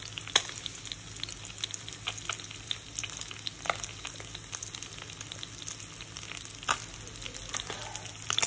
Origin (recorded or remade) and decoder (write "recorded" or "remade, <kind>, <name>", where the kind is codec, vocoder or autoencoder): recorded